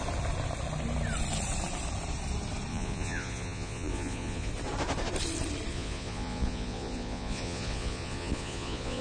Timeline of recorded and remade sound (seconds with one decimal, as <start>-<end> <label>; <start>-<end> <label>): 0.0-2.7 recorded; 2.7-4.5 remade; 4.5-5.7 recorded; 5.7-9.0 remade

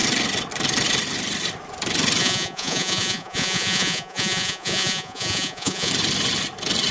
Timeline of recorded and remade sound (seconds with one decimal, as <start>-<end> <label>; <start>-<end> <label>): 0.0-2.2 recorded; 2.2-5.9 remade; 5.9-6.9 recorded

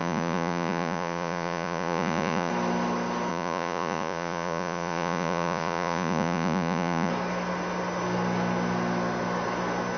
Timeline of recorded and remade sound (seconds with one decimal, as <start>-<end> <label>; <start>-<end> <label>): 0.0-2.5 remade; 2.5-3.3 recorded; 3.3-7.1 remade; 7.1-10.0 recorded